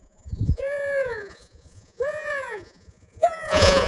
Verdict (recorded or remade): remade